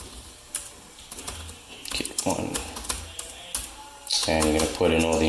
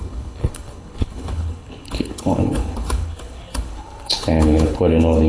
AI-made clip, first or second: second